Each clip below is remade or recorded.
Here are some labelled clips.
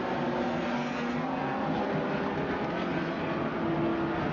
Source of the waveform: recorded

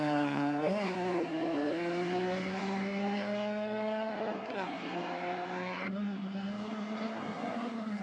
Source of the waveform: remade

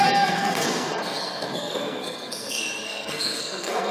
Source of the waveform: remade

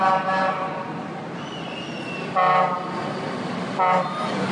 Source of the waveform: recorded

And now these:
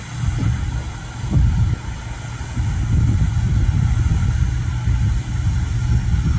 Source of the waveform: recorded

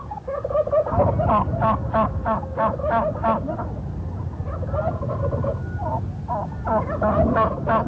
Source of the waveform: recorded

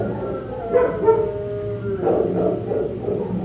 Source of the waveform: recorded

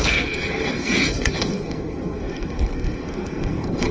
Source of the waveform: remade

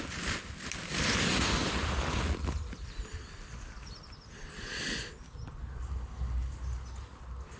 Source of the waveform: recorded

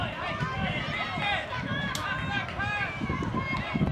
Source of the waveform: recorded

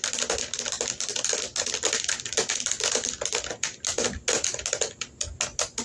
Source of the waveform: recorded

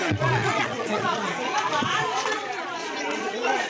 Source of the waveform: remade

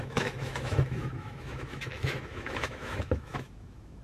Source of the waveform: remade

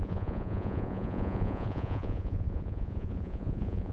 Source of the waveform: remade